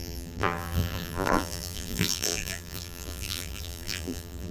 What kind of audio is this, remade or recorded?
remade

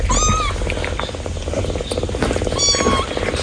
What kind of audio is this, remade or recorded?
recorded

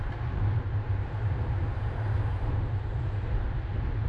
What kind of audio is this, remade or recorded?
remade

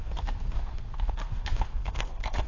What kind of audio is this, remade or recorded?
remade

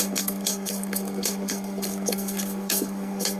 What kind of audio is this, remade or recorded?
remade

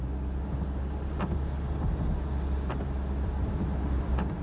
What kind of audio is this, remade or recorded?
recorded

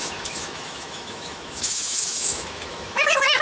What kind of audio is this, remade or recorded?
remade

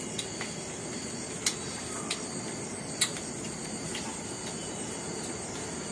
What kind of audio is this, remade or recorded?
recorded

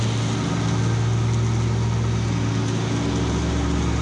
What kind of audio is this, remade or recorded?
recorded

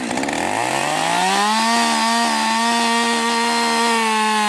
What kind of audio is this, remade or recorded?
recorded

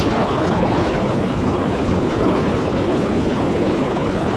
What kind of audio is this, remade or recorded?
remade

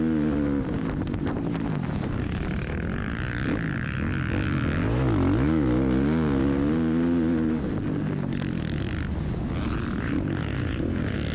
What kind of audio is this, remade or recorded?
recorded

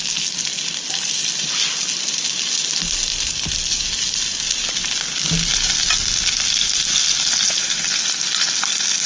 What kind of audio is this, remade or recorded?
recorded